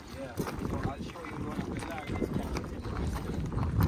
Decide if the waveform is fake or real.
real